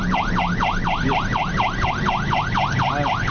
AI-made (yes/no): no